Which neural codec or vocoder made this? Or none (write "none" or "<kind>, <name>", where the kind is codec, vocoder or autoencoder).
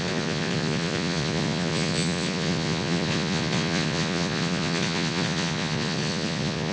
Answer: vocoder, Vocos